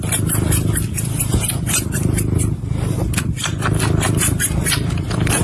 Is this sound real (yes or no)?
no